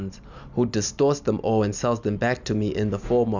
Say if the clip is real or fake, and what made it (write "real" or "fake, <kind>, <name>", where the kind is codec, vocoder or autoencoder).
real